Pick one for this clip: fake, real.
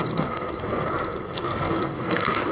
fake